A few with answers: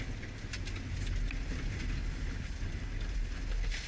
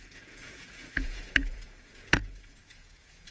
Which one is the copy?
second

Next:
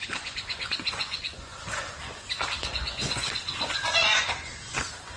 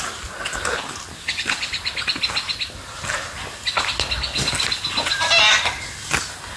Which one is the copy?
first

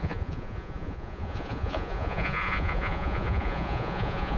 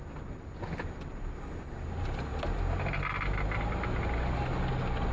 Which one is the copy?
first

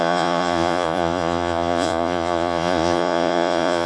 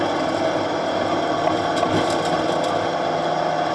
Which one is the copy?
first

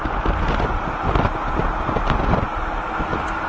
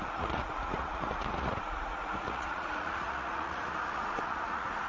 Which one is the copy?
second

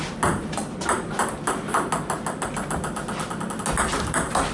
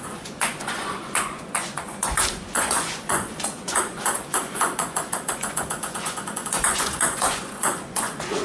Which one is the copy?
second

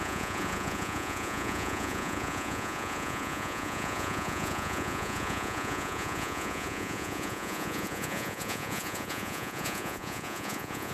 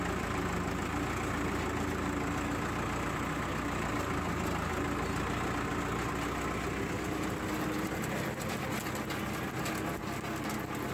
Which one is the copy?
first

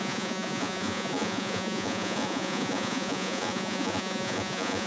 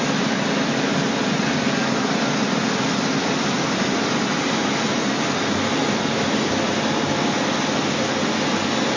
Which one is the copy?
first